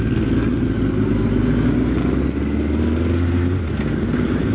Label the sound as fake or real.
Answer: real